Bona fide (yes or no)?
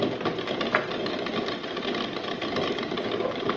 yes